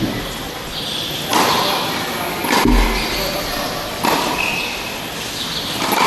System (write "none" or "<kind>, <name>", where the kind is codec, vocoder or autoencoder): none